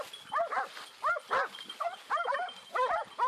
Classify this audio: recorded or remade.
recorded